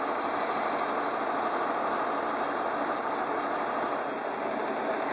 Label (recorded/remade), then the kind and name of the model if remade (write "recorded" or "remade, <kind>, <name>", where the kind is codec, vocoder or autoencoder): recorded